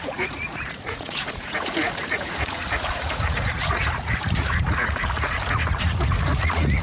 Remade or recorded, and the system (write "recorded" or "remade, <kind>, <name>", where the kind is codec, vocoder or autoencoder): remade, vocoder, Vocos